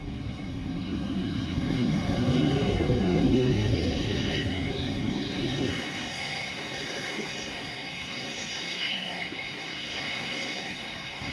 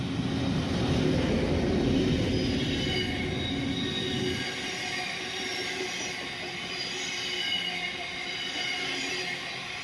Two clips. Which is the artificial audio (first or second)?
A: first